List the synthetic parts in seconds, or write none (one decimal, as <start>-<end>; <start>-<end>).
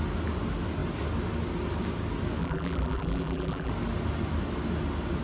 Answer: 2.4-3.7